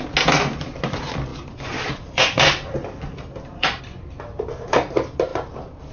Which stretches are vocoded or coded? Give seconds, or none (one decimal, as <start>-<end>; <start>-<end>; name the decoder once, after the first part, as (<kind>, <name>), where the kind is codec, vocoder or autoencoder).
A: 1.3-3.8 (vocoder, BigVGAN v2)